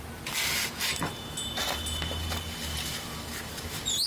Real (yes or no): yes